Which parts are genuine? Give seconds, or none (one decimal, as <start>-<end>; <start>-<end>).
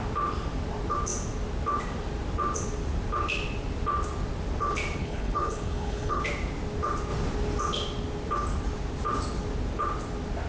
0.0-5.0; 6.2-10.5